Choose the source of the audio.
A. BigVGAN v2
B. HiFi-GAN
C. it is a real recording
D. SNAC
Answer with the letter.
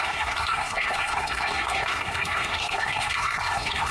D